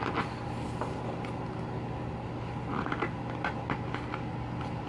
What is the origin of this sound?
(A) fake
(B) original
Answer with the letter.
B